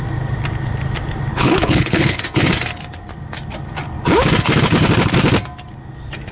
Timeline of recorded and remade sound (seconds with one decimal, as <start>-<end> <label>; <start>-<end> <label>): 0.0-1.3 recorded; 1.3-2.2 remade; 2.2-6.3 recorded